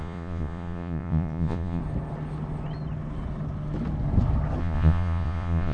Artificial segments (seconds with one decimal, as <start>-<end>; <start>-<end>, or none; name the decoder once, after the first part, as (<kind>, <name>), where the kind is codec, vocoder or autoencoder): 0.0-1.8 (vocoder, Vocos); 4.6-5.7